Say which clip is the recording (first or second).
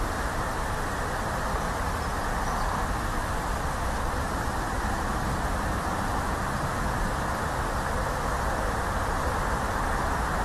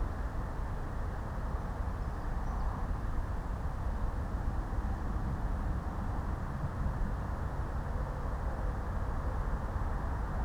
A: second